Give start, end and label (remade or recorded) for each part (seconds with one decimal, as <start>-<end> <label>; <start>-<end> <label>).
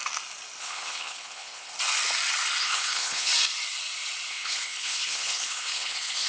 0.0-0.6 recorded; 0.6-1.7 remade; 1.7-2.6 recorded; 2.6-3.3 remade; 3.3-4.3 recorded; 4.3-6.3 remade